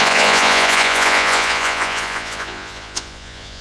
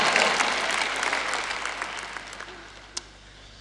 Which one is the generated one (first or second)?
first